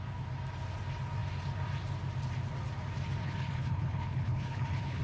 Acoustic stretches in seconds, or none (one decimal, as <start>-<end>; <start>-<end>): 0.0-3.2